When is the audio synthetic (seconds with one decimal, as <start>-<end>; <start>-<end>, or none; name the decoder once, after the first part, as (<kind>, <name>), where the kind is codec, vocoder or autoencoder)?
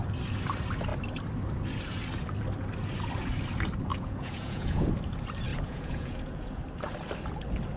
3.9-4.9 (vocoder, Vocos); 5.5-6.6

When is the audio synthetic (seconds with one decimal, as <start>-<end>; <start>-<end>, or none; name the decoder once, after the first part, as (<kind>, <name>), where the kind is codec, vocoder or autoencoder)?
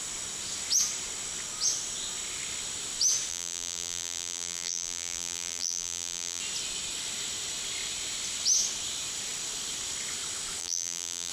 3.3-6.4 (vocoder, BigVGAN v2); 10.6-11.3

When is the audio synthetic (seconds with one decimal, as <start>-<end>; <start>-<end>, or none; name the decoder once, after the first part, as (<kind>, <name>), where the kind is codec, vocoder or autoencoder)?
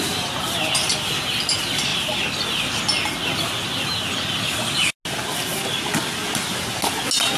none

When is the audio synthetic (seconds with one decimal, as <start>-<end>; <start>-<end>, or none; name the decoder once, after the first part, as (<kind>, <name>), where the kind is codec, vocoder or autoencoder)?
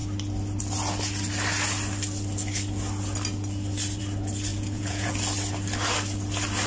4.5-5.1 (vocoder, Vocos)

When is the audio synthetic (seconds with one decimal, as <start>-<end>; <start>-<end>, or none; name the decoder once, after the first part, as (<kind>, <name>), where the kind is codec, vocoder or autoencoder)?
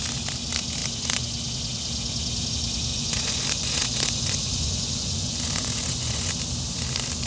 2.9-6.3 (vocoder, Vocos)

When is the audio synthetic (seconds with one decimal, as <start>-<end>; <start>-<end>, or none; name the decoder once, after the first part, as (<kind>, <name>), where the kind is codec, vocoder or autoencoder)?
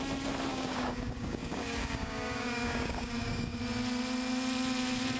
0.5-3.6 (codec, DAC)